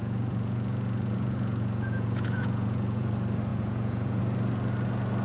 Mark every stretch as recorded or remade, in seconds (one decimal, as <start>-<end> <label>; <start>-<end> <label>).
0.0-3.1 remade; 3.1-3.5 recorded; 3.5-4.2 remade; 4.2-5.2 recorded